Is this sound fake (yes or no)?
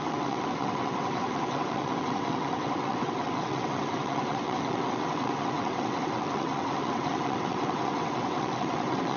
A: yes